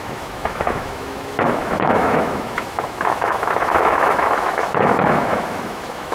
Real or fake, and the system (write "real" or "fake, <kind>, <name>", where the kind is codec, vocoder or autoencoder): fake, autoencoder, DAC-VAE